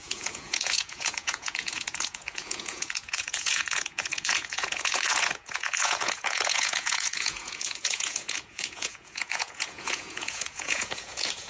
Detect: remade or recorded remade